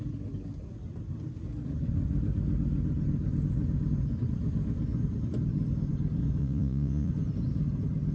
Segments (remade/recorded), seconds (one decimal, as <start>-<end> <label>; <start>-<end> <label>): 0.0-6.4 recorded; 6.4-7.1 remade; 7.1-8.1 recorded